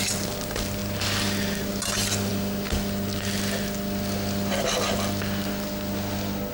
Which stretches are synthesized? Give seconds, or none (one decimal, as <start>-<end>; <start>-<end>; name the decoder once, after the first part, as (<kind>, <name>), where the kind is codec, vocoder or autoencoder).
none